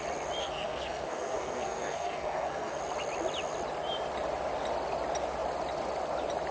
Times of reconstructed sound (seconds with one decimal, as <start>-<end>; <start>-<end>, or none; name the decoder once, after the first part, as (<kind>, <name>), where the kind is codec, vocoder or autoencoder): 0.4-2.8 (codec, SNAC)